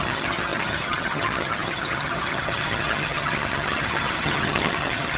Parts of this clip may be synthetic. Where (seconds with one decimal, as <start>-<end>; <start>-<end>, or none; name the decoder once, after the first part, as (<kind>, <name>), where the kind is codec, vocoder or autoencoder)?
0.0-5.2 (vocoder, HiFi-GAN)